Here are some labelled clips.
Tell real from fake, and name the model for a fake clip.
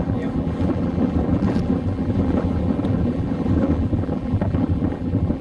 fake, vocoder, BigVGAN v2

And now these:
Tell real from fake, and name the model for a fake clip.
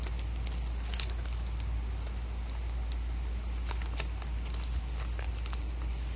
real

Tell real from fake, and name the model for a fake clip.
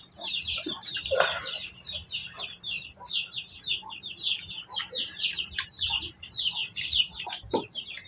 fake, vocoder, BigVGAN v2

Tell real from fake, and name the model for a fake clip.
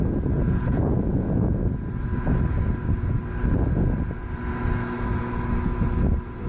real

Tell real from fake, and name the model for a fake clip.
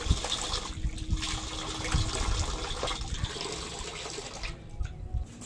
real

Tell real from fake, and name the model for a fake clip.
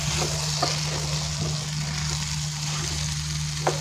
real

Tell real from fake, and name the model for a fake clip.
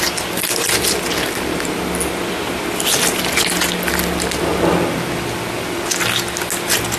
real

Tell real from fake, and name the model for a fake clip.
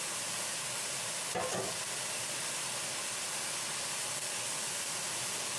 real